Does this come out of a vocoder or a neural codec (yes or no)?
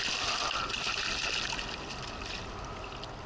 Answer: no